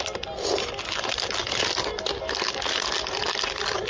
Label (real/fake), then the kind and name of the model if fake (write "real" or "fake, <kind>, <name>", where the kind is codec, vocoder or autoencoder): real